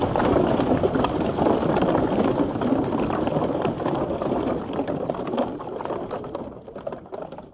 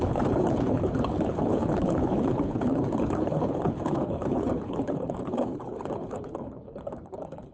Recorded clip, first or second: first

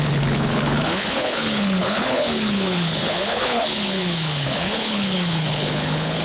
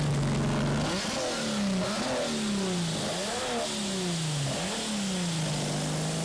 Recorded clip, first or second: second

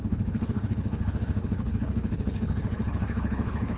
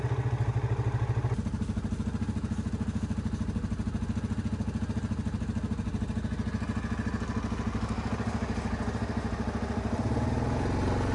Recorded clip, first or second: second